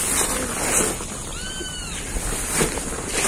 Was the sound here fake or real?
real